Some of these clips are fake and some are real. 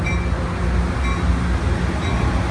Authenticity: real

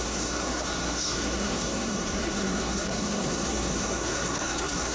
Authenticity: fake